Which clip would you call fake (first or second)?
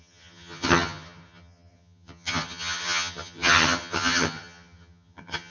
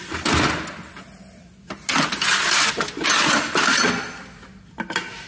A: first